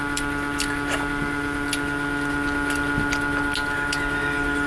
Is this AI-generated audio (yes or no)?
no